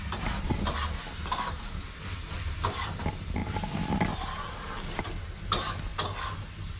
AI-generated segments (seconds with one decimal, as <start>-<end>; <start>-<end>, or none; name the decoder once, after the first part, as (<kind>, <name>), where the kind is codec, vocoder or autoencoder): none